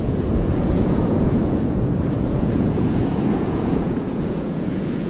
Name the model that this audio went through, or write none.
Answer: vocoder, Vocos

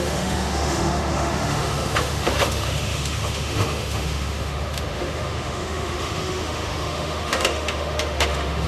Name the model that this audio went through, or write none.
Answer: autoencoder, DAC-VAE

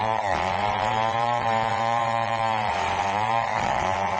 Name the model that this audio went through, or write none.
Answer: vocoder, Vocos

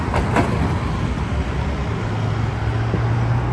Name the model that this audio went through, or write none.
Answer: none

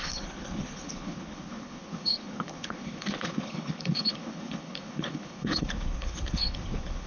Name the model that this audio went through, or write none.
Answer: codec, HILCodec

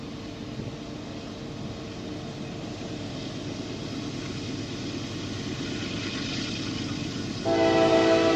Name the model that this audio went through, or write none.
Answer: none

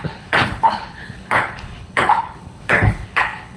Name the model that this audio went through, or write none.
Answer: codec, HILCodec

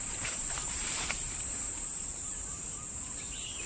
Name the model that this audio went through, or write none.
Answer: vocoder, BigVGAN v2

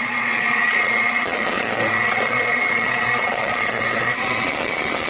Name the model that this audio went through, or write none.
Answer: vocoder, Vocos